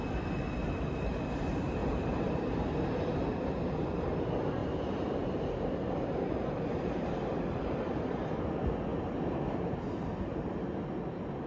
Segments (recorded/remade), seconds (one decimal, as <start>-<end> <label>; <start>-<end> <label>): 0.0-1.8 recorded; 1.8-2.4 remade; 2.4-4.6 recorded; 4.6-8.4 remade; 8.4-8.9 recorded; 8.9-10.5 remade; 10.5-11.5 recorded